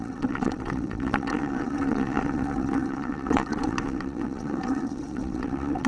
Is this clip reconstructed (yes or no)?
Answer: yes